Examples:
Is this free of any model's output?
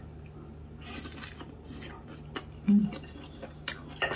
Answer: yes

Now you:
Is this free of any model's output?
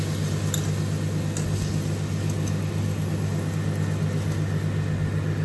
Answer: yes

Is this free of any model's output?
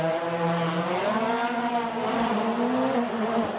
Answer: yes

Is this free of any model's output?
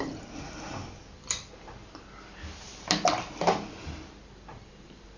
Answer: yes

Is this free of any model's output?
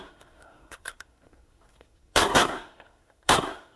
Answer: no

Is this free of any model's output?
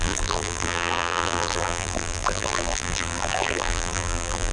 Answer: no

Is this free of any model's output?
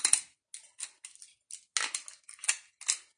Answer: yes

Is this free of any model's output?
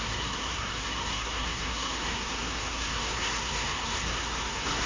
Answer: no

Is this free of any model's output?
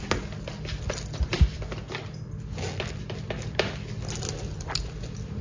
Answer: yes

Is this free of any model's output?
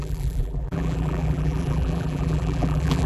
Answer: no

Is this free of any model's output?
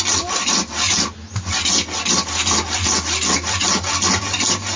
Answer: yes